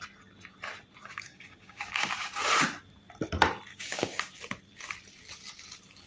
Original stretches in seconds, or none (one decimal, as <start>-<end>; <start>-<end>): 0.0-1.0; 2.4-3.7; 4.4-6.1